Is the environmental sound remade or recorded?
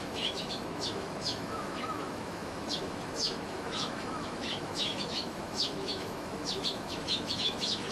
remade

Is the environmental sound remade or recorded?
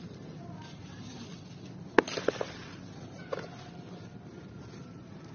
recorded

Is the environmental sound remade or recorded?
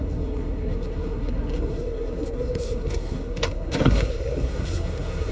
remade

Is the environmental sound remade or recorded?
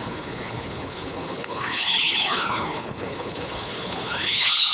remade